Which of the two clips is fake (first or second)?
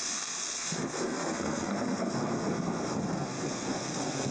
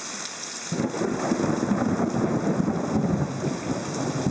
first